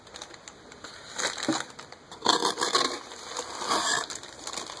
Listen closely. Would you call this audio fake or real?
real